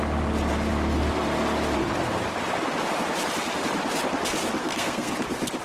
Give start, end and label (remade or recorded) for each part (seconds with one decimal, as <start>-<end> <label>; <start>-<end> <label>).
0.0-4.6 recorded; 4.6-5.1 remade; 5.1-5.6 recorded